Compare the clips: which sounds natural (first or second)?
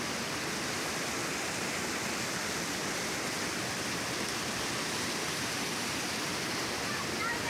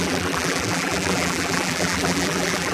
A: first